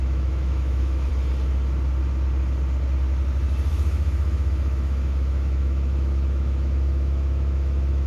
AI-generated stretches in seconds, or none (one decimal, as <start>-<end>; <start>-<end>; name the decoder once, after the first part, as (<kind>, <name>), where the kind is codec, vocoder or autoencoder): 0.0-1.1 (autoencoder, DAC-VAE); 3.7-8.1